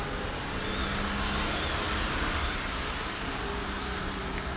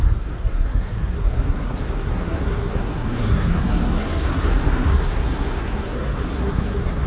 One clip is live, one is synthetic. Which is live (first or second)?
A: first